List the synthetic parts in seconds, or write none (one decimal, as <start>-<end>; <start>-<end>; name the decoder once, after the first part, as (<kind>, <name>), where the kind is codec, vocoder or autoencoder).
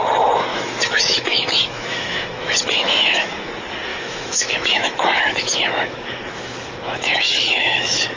0.5-3.5 (autoencoder, DAC-VAE); 3.9-8.2